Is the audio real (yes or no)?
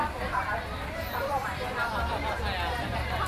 yes